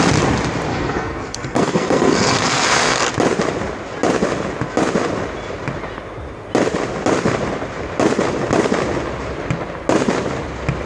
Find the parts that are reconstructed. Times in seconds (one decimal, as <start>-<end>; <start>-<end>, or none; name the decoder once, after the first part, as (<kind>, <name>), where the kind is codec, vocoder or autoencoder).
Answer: 0.7-3.1 (codec, SNAC)